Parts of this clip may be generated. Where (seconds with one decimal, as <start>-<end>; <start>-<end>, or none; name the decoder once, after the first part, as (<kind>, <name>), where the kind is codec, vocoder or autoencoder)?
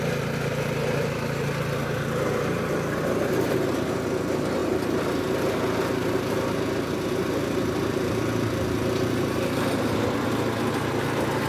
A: 4.6-5.2 (vocoder, BigVGAN v2)